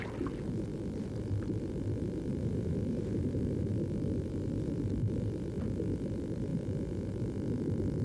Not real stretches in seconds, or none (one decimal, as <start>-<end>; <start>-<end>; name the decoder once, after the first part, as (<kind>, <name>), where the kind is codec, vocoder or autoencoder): 2.3-3.7 (vocoder, BigVGAN v2); 6.5-7.1